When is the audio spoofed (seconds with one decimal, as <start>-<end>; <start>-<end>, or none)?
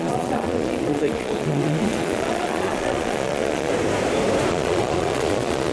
0.0-3.7; 4.5-5.7